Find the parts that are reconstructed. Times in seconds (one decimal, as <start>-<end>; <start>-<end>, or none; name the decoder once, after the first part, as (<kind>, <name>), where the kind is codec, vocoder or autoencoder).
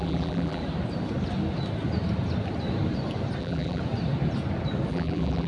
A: 0.0-0.6 (vocoder, BigVGAN v2); 3.4-3.8; 4.9-5.5